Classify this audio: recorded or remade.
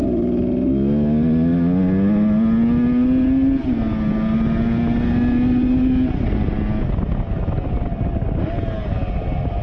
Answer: recorded